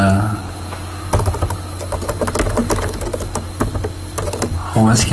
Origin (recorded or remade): recorded